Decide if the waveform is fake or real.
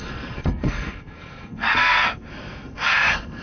fake